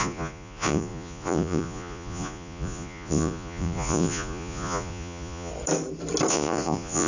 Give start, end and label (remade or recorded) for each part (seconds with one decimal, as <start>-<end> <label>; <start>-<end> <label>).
0.0-5.5 remade; 5.5-6.3 recorded; 6.3-7.1 remade